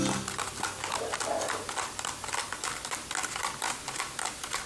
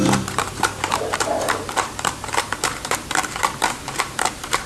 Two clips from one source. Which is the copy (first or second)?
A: second